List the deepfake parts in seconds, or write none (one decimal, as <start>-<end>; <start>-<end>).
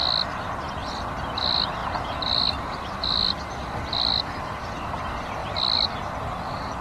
0.9-5.4